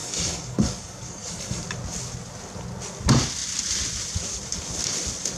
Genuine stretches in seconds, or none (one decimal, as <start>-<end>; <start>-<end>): 1.6-5.4